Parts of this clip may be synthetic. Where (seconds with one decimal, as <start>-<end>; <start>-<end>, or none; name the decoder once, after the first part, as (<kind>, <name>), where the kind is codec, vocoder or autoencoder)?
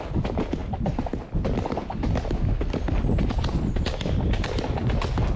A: none